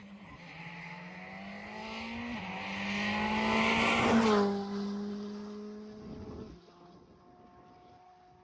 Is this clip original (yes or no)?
yes